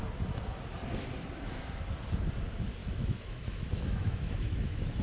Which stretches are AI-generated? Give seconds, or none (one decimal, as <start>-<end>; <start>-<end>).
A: 2.8-5.0